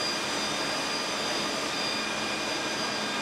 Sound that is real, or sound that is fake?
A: real